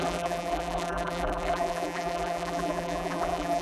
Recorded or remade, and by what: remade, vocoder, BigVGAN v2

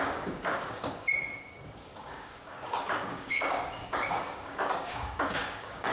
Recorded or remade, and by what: remade, codec, DAC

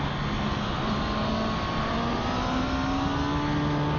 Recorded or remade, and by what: recorded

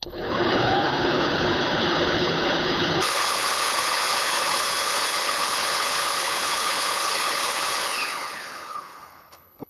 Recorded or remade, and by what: remade, codec, HILCodec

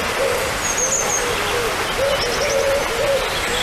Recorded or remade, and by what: recorded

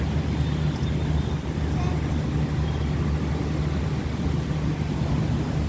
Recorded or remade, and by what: recorded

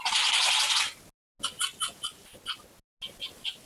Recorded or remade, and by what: recorded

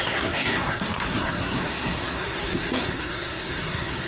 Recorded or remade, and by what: remade, codec, SNAC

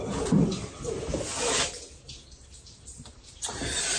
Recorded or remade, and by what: recorded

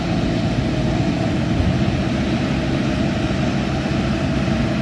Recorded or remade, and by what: recorded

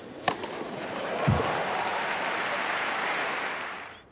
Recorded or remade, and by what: remade, vocoder, BigVGAN v2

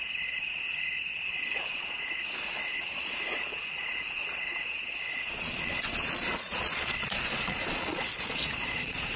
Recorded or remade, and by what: remade, vocoder, Vocos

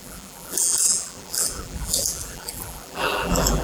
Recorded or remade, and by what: remade, vocoder, BigVGAN v2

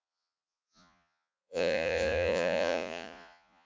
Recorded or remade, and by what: remade, vocoder, Vocos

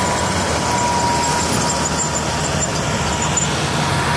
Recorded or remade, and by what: recorded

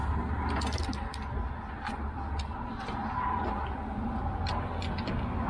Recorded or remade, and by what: recorded